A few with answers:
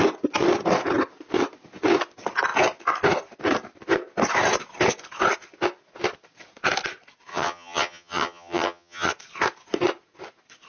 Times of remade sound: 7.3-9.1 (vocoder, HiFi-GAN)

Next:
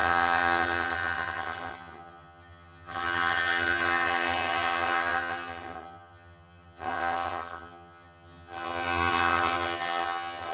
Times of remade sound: 0.0-10.5 (vocoder, HiFi-GAN)

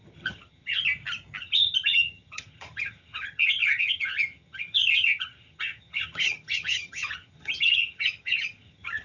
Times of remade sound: 0.0-0.8 (vocoder, HiFi-GAN); 1.4-9.0

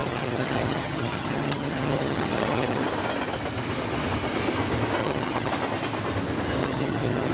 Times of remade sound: 0.0-2.8 (vocoder, HiFi-GAN); 5.0-5.5; 6.6-7.3